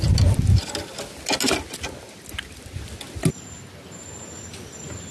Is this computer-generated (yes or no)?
no